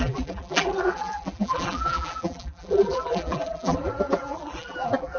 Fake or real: fake